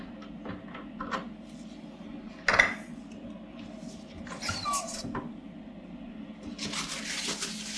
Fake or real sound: real